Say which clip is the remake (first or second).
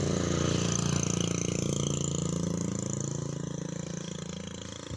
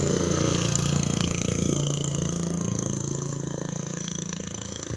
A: second